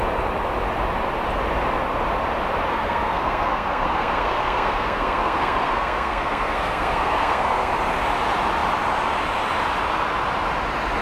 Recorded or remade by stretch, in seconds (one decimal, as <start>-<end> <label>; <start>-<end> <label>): 0.0-2.7 recorded; 2.7-7.7 remade; 7.7-11.0 recorded